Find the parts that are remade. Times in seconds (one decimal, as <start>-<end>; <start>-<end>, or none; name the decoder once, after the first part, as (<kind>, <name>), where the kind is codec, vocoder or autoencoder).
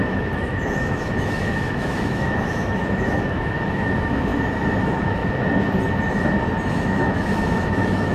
0.0-4.3 (autoencoder, DAC-VAE); 4.8-5.2; 6.7-8.1